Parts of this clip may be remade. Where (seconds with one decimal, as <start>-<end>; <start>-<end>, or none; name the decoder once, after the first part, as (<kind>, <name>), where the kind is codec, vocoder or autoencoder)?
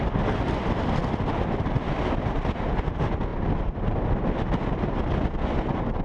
none